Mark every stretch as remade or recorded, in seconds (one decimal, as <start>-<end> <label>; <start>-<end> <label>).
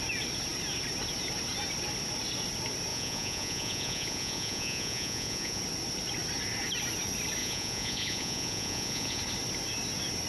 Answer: 0.0-2.9 recorded; 2.9-5.6 remade; 5.6-7.4 recorded; 7.4-9.2 remade; 9.2-10.3 recorded